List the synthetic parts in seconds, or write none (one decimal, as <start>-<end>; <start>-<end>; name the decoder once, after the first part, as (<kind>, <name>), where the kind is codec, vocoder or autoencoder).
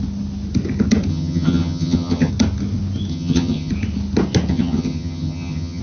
1.1-2.3 (vocoder, HiFi-GAN); 3.1-3.7; 4.5-5.8